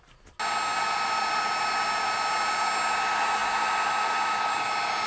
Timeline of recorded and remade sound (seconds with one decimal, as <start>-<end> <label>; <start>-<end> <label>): 0.0-5.1 recorded

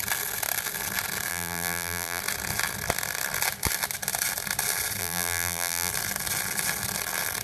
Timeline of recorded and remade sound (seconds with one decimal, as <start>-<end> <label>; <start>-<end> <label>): 0.0-1.3 recorded; 1.3-2.2 remade; 2.2-5.0 recorded; 5.0-5.9 remade; 5.9-7.4 recorded

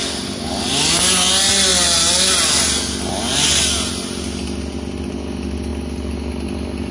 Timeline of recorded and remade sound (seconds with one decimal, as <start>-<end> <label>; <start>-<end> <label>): 0.0-6.9 recorded

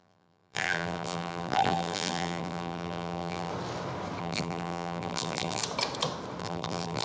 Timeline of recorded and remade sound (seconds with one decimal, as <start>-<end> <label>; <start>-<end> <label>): 0.0-3.5 remade; 3.5-4.2 recorded; 4.2-5.6 remade; 5.6-6.4 recorded; 6.4-7.0 remade

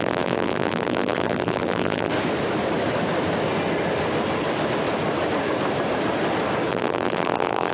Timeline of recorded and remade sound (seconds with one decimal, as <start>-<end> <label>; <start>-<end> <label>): 0.0-2.1 remade; 2.1-6.7 recorded; 6.7-7.7 remade